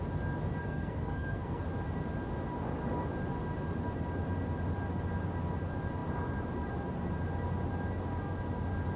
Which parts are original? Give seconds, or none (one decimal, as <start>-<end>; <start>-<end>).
0.0-0.6; 1.6-9.0